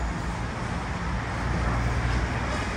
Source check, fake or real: real